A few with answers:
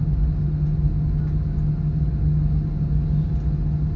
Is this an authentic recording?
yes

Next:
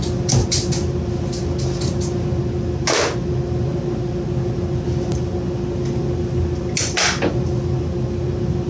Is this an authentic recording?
yes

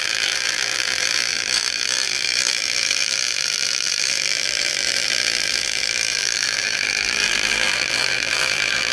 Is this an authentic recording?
no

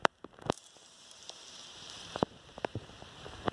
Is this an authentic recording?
no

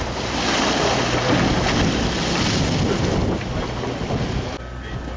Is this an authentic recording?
yes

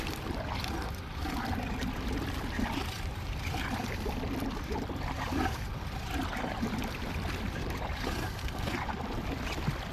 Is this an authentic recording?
yes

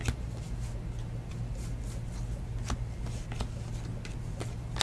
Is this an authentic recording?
yes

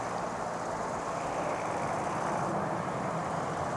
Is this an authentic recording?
yes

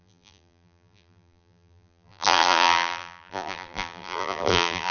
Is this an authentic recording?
no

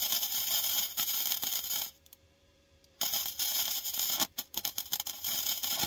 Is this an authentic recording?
no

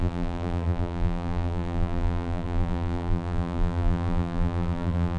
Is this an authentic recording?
no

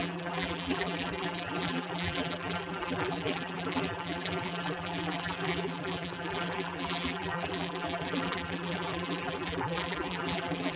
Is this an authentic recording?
no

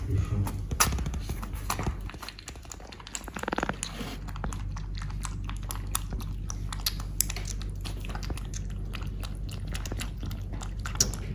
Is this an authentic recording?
yes